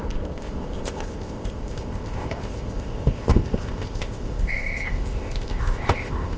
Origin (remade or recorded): remade